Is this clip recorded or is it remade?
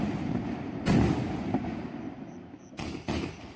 recorded